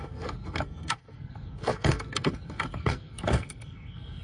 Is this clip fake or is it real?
fake